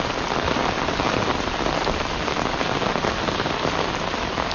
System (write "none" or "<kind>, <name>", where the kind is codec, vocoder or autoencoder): none